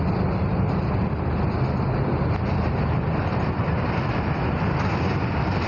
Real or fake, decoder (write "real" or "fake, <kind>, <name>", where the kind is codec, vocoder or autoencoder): real